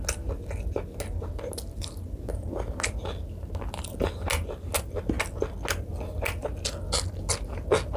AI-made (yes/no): no